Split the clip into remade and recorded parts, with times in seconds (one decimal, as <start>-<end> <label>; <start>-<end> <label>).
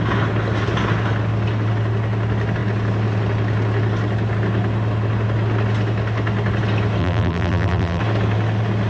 0.0-7.0 recorded; 7.0-8.0 remade; 8.0-8.9 recorded